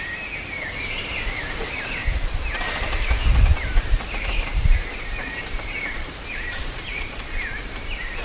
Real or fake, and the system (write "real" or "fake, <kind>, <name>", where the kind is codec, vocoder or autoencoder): fake, vocoder, BigVGAN v2